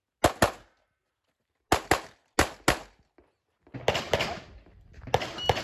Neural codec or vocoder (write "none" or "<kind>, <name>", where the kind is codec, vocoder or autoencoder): none